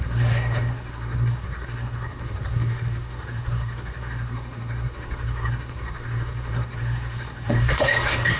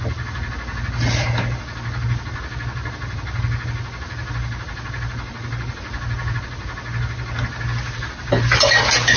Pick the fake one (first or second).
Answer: first